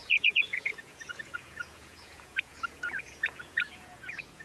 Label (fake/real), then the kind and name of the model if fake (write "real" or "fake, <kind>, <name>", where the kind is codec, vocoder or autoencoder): fake, vocoder, Vocos